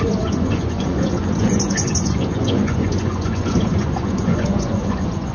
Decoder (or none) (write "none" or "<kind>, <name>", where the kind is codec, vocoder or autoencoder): vocoder, Vocos